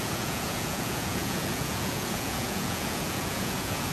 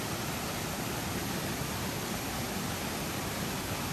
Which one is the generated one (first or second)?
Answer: first